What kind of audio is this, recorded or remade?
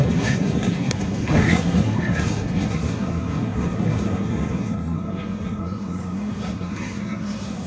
remade